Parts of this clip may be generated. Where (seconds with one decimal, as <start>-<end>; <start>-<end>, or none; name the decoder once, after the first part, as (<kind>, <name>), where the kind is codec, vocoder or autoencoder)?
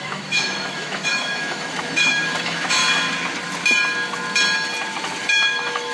0.0-2.8 (autoencoder, DAC-VAE); 5.2-5.9